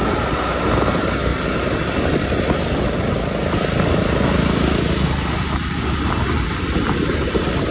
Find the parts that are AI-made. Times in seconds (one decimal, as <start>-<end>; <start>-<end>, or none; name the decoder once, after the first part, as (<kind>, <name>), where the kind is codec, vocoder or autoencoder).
none